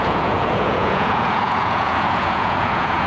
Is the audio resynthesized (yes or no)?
yes